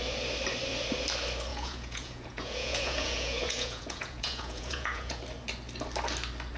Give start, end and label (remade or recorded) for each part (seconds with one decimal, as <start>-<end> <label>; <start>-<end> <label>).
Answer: 0.0-1.5 recorded; 1.5-5.2 remade; 5.2-6.6 recorded

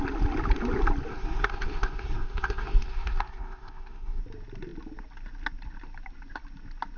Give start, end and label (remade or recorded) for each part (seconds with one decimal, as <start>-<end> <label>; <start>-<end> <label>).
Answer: 0.0-1.1 recorded; 1.1-4.2 remade; 4.2-7.0 recorded

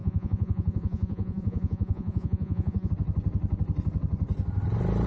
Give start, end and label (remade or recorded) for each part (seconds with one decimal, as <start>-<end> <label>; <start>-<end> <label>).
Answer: 0.0-2.9 remade; 2.9-5.1 recorded

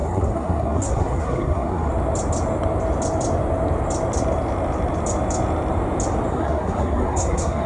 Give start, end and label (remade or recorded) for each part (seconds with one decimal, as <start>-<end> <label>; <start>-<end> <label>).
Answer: 0.0-1.9 remade; 1.9-6.3 recorded; 6.3-7.7 remade

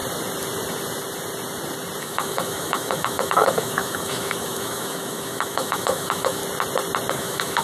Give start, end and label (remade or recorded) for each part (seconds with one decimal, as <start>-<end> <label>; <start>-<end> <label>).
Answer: 0.0-2.0 recorded; 2.0-6.4 remade; 6.4-7.1 recorded; 7.1-7.6 remade